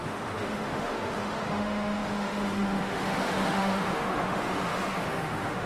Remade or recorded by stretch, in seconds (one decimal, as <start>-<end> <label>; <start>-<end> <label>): 0.0-5.7 remade